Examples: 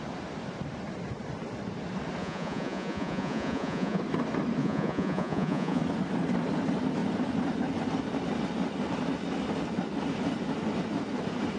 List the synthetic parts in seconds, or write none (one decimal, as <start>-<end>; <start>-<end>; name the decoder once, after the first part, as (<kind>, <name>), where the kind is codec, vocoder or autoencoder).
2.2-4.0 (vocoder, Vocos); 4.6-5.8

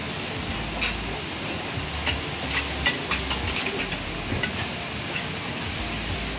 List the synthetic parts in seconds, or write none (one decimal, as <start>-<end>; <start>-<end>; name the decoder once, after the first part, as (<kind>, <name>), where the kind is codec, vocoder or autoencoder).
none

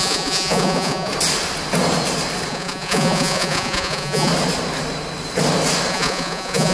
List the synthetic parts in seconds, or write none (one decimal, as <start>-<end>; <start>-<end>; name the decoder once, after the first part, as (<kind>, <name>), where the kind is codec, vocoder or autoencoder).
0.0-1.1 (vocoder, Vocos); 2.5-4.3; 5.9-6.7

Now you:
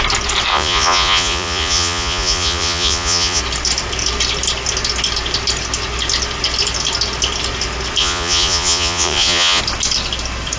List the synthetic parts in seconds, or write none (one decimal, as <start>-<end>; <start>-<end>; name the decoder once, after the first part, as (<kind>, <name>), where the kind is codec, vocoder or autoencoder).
0.5-3.4 (vocoder, Vocos); 8.0-9.6

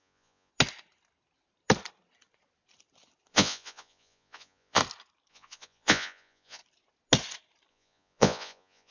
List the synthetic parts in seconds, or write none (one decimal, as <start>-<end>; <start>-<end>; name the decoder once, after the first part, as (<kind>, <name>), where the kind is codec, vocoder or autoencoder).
0.0-0.5 (vocoder, Vocos); 3.3-4.8; 5.3-6.6; 7.7-8.9